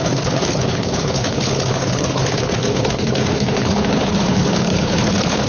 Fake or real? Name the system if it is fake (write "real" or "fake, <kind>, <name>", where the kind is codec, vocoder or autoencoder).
fake, codec, HILCodec